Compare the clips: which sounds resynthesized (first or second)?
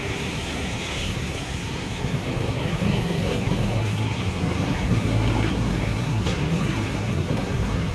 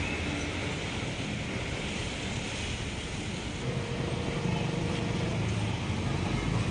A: first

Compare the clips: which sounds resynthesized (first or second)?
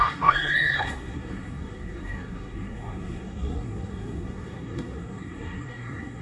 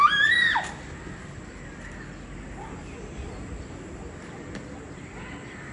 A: first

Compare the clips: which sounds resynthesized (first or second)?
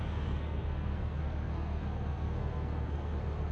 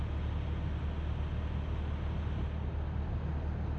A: first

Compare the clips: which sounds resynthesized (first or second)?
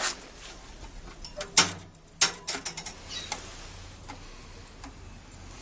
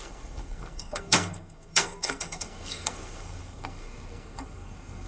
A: second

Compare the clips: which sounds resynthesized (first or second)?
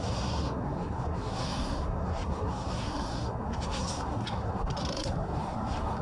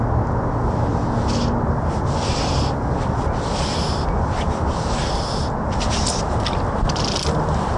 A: first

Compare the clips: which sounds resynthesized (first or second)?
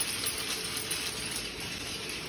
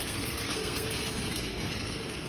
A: second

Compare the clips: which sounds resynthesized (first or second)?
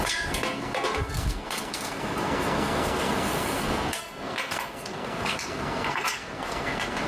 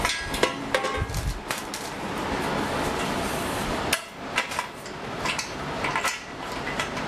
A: first